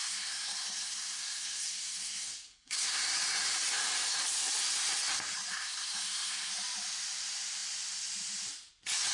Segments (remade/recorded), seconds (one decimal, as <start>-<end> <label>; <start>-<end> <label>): 0.0-3.0 remade; 3.0-5.5 recorded; 5.5-6.5 remade; 6.5-9.1 recorded